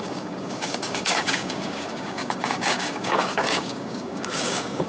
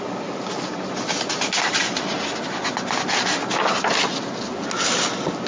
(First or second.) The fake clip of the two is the first